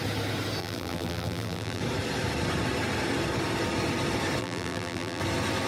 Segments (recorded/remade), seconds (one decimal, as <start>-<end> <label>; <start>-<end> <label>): 0.0-0.6 recorded; 0.6-1.8 remade; 1.8-4.4 recorded; 4.4-5.2 remade; 5.2-5.7 recorded